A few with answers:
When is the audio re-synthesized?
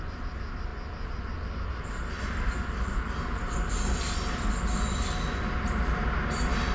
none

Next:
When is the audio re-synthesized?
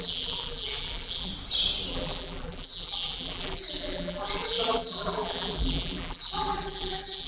0.0-1.3 (vocoder, BigVGAN v2); 1.9-7.3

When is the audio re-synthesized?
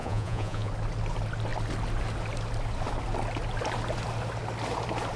0.0-0.7 (vocoder, Vocos)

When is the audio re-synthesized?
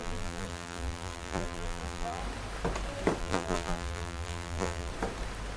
0.0-2.2 (vocoder, BigVGAN v2); 3.2-4.9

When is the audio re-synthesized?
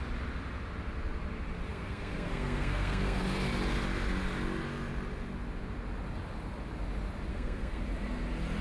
1.7-3.2 (codec, SNAC); 7.3-7.8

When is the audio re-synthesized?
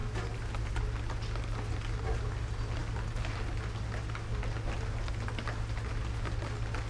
none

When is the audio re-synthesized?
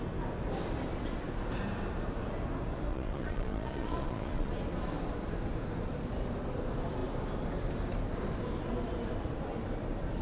2.9-4.5 (vocoder, Vocos)